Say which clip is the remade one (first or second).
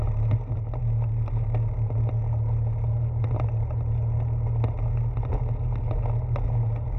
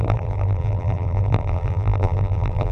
second